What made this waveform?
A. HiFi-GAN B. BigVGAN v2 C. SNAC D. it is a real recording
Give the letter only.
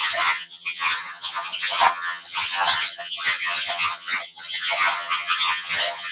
A